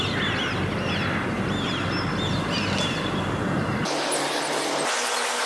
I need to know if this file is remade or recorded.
recorded